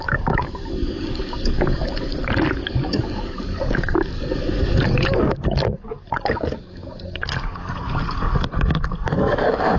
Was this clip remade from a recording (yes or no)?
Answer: yes